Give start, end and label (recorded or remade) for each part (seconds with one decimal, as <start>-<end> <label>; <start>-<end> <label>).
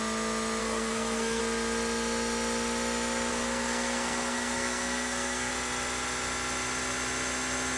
0.0-0.6 recorded; 0.6-1.4 remade; 1.4-3.3 recorded; 3.3-5.5 remade; 5.5-7.8 recorded